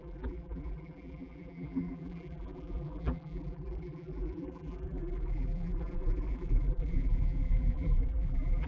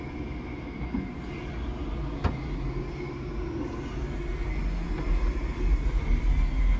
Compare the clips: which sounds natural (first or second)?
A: second